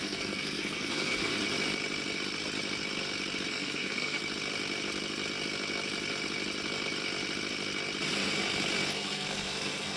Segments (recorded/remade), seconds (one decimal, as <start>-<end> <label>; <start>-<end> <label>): 0.0-1.3 remade; 1.3-3.5 recorded; 3.5-4.2 remade; 4.2-8.9 recorded; 8.9-10.0 remade